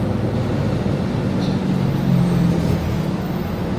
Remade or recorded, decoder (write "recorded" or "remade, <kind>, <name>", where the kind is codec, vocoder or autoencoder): recorded